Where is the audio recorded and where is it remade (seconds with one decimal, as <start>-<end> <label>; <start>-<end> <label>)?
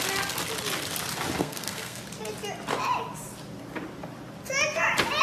0.0-1.4 recorded; 1.4-2.0 remade; 2.0-5.2 recorded